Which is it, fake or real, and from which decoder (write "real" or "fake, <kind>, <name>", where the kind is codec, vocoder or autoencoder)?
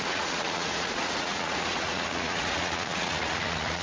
fake, vocoder, Vocos